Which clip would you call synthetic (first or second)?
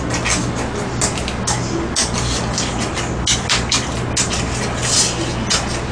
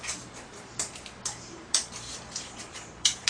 second